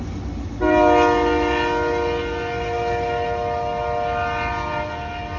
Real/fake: real